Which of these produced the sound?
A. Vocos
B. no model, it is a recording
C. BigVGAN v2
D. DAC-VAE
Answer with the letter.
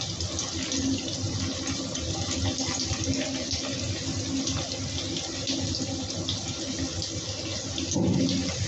B